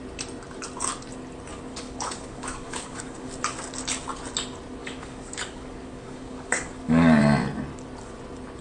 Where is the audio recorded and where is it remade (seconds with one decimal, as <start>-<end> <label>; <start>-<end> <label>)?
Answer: 0.0-1.5 recorded; 1.5-3.3 remade; 3.3-4.8 recorded; 4.8-7.2 remade; 7.2-8.6 recorded